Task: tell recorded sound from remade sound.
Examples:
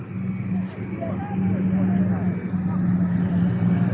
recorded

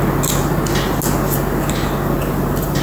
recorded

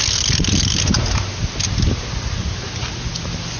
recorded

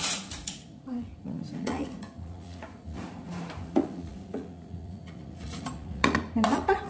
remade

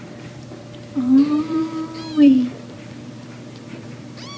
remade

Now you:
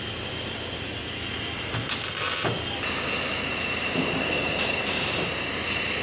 recorded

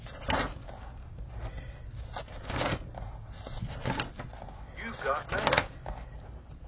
recorded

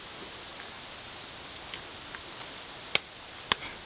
recorded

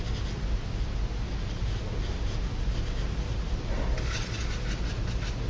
recorded